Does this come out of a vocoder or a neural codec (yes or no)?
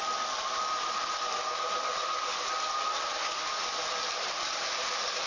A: no